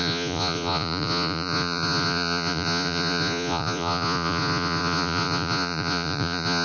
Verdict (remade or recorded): remade